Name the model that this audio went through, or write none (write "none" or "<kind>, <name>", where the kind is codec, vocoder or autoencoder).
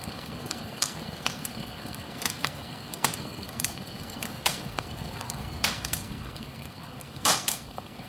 codec, SNAC